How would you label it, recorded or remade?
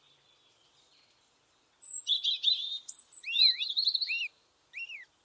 recorded